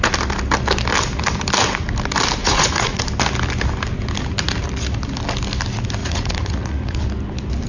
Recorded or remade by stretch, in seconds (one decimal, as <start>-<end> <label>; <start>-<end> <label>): 0.0-2.4 recorded; 2.4-3.0 remade; 3.0-6.0 recorded; 6.0-7.0 remade; 7.0-7.7 recorded